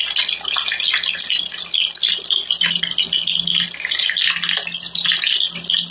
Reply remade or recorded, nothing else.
recorded